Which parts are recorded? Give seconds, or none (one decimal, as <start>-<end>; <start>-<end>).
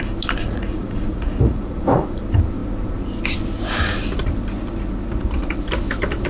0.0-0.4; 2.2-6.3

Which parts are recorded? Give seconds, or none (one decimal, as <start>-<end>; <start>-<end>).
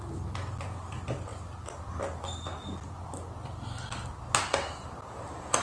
0.0-5.6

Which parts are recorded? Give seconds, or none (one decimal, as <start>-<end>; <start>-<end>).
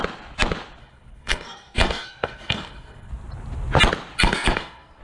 0.0-0.8; 3.1-4.2